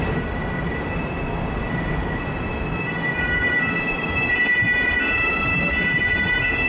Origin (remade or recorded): recorded